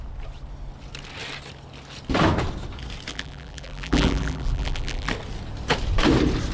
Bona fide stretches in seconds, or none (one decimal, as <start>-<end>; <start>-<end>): 0.0-3.1; 5.1-6.5